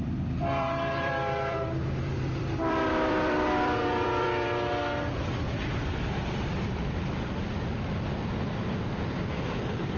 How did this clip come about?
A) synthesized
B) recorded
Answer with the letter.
A